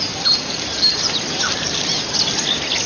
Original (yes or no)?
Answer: yes